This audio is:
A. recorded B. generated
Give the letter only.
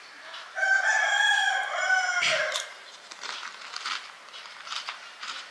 B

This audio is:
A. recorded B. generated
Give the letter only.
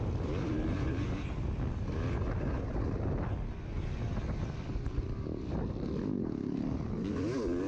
A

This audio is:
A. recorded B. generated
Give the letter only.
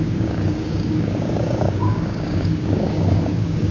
B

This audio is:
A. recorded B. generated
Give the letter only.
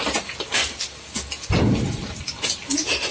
A